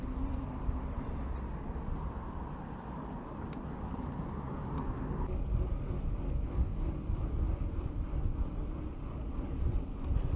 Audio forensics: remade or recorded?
recorded